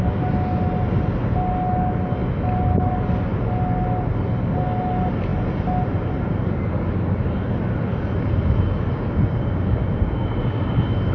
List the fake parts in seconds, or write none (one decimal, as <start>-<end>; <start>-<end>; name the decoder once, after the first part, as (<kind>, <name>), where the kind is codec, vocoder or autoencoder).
none